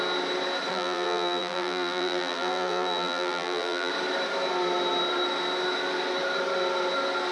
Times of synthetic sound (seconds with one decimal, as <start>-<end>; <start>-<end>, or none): 0.7-3.9